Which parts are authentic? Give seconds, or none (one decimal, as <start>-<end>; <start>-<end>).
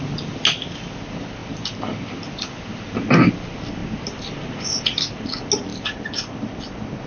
0.0-1.4; 2.2-5.7